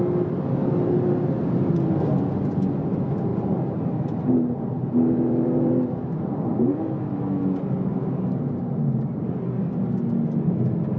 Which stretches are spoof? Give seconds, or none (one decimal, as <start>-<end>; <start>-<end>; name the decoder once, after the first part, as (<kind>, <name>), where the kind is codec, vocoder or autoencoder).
3.3-5.7 (vocoder, BigVGAN v2)